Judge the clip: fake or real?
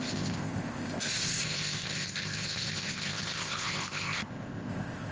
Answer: fake